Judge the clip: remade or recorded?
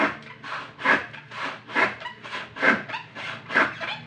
recorded